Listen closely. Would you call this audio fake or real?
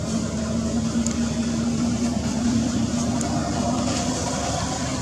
real